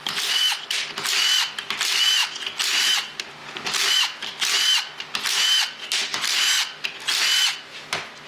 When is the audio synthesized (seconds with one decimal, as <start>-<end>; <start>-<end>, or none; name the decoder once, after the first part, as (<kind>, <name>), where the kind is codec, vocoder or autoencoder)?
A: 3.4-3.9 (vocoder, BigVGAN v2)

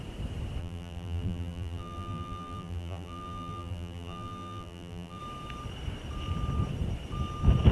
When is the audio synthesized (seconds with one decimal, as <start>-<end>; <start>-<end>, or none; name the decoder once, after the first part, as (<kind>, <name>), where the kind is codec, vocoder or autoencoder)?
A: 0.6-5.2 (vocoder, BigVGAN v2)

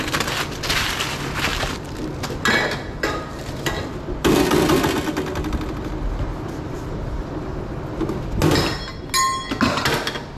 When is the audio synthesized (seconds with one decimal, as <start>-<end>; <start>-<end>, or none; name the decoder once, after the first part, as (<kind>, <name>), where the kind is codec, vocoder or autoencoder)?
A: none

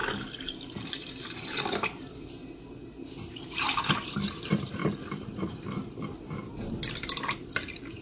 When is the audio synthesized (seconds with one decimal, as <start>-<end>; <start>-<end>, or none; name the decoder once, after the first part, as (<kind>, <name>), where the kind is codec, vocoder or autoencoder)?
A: 0.9-4.8 (vocoder, BigVGAN v2); 5.3-8.0

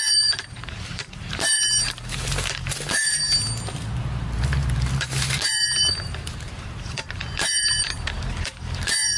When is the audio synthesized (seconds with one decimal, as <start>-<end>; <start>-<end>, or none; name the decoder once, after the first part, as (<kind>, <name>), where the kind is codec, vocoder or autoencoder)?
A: 0.0-3.2 (vocoder, BigVGAN v2); 4.0-9.2

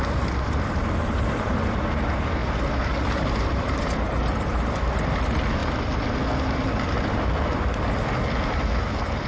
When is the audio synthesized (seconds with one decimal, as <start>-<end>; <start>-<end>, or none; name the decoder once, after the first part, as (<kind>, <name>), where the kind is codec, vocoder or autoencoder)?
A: 0.0-2.4 (vocoder, BigVGAN v2); 3.1-5.6

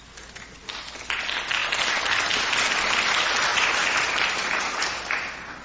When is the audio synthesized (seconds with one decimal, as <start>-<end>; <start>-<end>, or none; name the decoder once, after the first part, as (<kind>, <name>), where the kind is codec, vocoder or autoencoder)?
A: 3.5-4.8 (vocoder, BigVGAN v2)